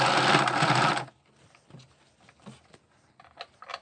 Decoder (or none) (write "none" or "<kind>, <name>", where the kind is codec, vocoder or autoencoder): none